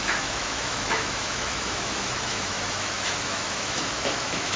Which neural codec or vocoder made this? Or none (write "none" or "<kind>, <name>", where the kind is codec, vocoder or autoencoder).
autoencoder, DAC-VAE